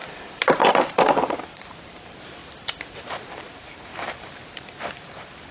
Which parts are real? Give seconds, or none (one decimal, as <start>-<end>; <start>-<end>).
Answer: 0.0-1.7; 2.4-3.4